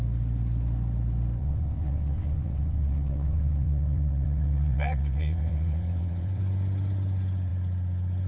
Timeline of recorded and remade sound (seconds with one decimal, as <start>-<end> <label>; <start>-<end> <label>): 0.0-1.4 recorded; 1.4-6.4 remade; 6.4-8.3 recorded